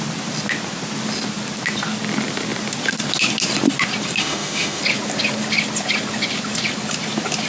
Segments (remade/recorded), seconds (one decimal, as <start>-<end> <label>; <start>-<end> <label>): 0.0-4.2 recorded; 4.2-4.8 remade; 4.8-7.5 recorded